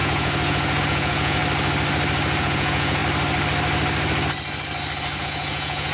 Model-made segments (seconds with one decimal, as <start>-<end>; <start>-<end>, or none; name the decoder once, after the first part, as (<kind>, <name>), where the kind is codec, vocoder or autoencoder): 0.0-1.4 (vocoder, Vocos); 2.4-3.0; 5.2-5.9